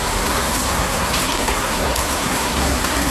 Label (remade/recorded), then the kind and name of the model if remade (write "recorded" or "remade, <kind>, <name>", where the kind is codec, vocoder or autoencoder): remade, codec, SNAC